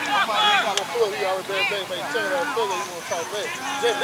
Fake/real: real